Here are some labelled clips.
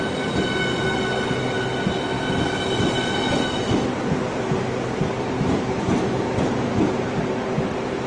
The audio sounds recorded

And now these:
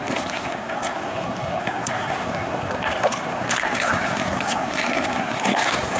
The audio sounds remade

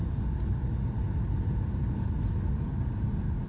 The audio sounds recorded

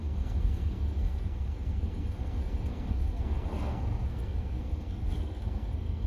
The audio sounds remade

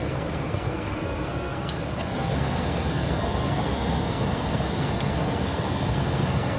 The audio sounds remade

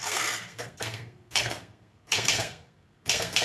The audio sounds remade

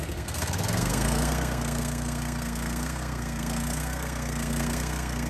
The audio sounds remade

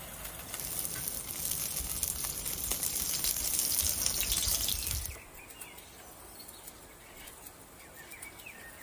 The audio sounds recorded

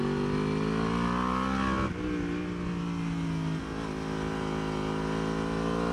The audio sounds recorded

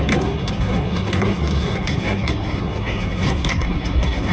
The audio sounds remade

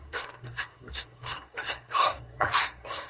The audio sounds remade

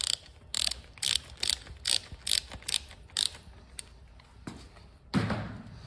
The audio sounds recorded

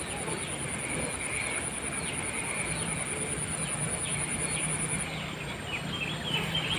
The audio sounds recorded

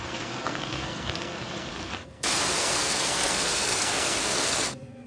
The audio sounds remade